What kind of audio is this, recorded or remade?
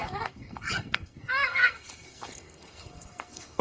remade